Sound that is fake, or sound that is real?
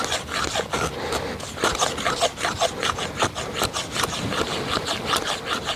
real